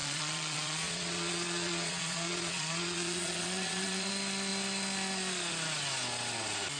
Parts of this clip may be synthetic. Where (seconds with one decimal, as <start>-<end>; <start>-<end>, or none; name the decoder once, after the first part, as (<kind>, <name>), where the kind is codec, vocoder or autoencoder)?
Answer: 0.0-4.1 (vocoder, Vocos)